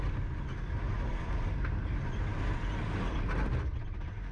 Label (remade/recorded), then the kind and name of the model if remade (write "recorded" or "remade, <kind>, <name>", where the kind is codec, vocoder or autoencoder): recorded